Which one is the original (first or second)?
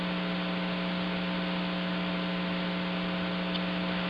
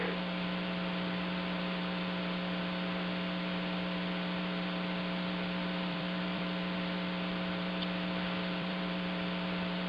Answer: first